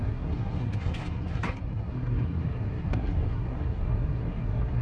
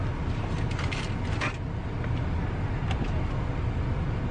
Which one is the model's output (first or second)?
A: first